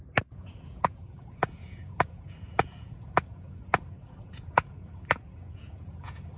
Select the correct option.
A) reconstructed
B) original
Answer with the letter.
A